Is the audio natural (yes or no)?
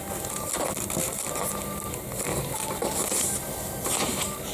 yes